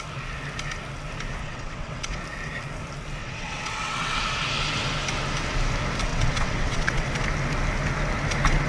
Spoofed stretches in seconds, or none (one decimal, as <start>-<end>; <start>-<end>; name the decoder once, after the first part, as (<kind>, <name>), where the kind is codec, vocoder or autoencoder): 1.4-2.2 (vocoder, WaveNeXt); 3.2-4.2; 6.1-7.1